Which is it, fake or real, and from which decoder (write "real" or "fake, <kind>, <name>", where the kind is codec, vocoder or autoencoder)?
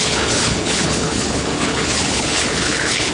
fake, codec, HILCodec